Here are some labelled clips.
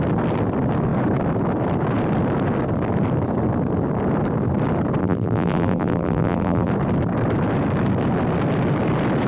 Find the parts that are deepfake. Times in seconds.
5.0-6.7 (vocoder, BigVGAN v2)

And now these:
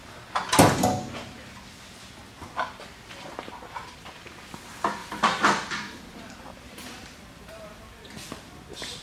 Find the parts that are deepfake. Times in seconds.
5.0-8.6 (vocoder, BigVGAN v2)

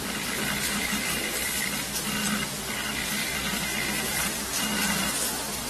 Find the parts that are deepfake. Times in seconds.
1.2-1.8 (vocoder, BigVGAN v2); 3.2-5.1

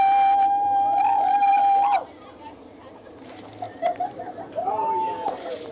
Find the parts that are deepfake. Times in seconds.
0.0-1.5 (vocoder, BigVGAN v2); 2.9-5.7

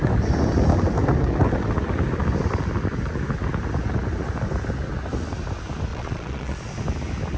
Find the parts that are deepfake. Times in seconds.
5.9-6.6 (vocoder, Vocos)